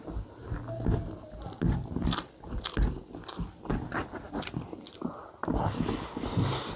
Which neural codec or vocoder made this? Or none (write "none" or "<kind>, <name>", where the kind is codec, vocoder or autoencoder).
none